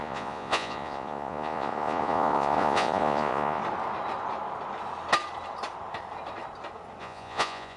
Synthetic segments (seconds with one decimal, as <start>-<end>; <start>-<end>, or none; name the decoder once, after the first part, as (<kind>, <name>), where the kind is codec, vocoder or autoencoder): 0.0-3.6 (vocoder, Vocos); 7.0-7.8

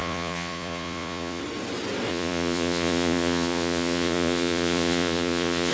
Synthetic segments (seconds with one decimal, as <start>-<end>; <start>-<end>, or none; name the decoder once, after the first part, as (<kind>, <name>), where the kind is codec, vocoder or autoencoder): 0.0-1.4 (vocoder, Vocos); 2.1-5.7

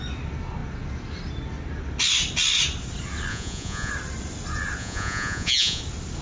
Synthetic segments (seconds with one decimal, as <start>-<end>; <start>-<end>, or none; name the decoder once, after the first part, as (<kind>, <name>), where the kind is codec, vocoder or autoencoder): 3.3-3.9 (vocoder, Vocos); 4.8-5.8

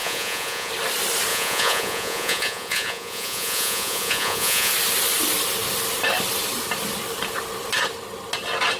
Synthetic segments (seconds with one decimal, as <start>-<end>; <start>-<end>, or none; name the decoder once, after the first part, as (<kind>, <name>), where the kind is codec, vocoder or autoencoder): 0.0-0.7 (vocoder, Vocos); 1.3-4.7